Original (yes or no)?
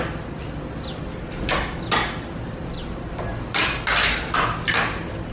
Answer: yes